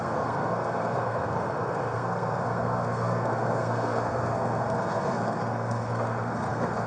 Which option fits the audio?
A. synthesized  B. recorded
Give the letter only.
A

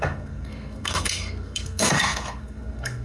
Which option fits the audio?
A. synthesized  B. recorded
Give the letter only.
A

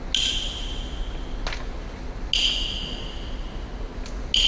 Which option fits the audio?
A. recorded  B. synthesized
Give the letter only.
A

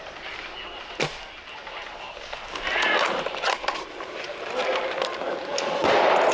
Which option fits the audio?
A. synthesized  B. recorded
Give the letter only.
B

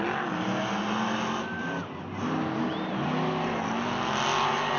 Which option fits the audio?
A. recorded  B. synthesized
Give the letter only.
A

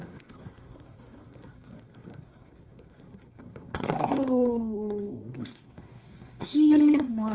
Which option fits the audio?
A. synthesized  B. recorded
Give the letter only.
A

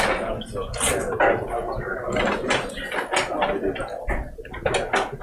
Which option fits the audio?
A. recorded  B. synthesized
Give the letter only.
A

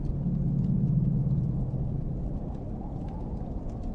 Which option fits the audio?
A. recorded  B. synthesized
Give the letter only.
A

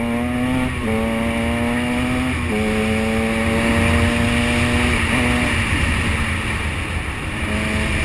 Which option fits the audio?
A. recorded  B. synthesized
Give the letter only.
A